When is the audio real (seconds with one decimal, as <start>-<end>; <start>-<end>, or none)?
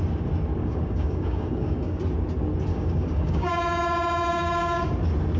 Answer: 0.0-0.6; 2.0-2.7; 3.8-4.3; 4.9-5.4